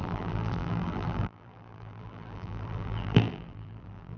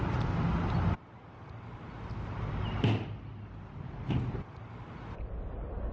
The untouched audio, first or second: second